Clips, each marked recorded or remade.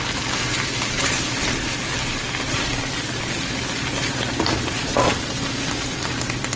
recorded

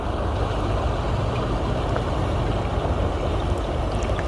recorded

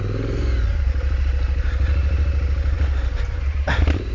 recorded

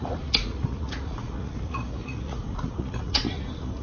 remade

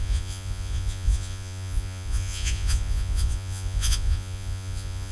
remade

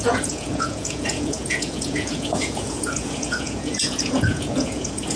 remade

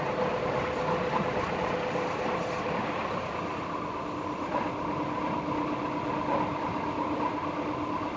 recorded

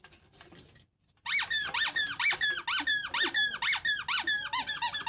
recorded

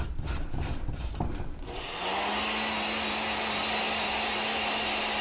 recorded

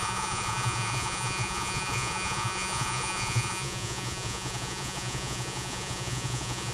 remade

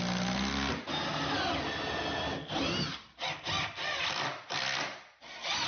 recorded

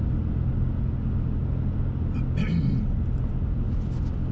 recorded